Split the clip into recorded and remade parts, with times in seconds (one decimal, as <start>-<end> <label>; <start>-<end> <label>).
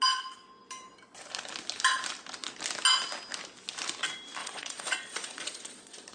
0.0-4.4 recorded; 4.4-6.1 remade